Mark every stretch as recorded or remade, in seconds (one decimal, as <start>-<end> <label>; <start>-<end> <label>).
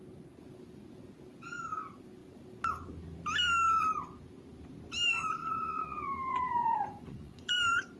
0.0-5.4 recorded; 5.4-7.5 remade; 7.5-8.0 recorded